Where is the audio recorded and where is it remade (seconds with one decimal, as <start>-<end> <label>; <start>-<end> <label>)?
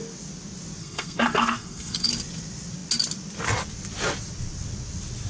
0.0-0.8 recorded; 0.8-2.1 remade; 2.1-5.3 recorded